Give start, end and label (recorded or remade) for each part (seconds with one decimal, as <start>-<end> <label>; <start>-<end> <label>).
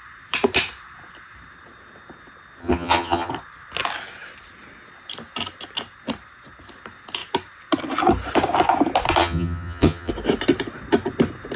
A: 0.0-2.6 recorded; 2.6-3.3 remade; 3.3-9.2 recorded; 9.2-10.1 remade; 10.1-11.6 recorded